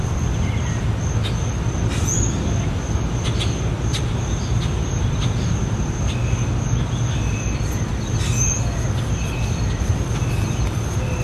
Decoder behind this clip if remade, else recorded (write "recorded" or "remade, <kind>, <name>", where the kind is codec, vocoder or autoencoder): recorded